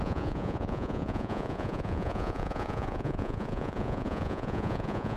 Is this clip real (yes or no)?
no